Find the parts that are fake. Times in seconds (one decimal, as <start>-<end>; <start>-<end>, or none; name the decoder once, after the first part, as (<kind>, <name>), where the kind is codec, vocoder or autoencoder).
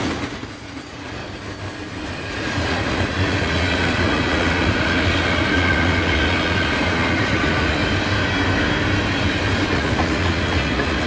0.0-1.2 (vocoder, Vocos); 2.3-7.8; 9.7-11.1